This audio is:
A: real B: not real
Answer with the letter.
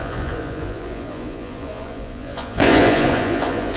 B